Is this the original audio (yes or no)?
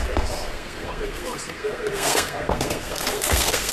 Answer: no